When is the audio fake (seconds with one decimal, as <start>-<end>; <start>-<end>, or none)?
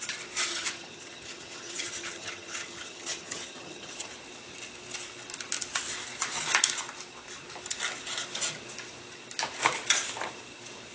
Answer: 0.5-4.1